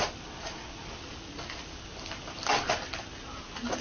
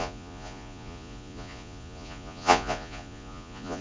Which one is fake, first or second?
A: second